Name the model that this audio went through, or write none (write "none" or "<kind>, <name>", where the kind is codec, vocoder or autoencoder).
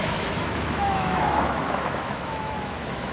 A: autoencoder, DAC-VAE